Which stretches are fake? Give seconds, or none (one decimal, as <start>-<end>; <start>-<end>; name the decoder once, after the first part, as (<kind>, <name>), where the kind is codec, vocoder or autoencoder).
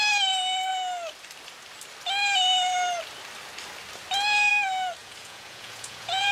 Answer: 5.0-6.3 (vocoder, Vocos)